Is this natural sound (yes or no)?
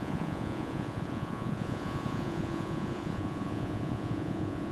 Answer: no